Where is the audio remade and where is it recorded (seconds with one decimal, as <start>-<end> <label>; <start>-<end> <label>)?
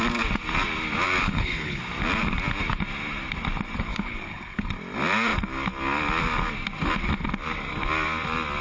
0.0-1.2 recorded; 1.2-1.8 remade; 1.8-3.9 recorded; 3.9-4.7 remade; 4.7-8.6 recorded